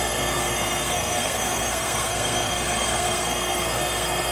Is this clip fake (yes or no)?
yes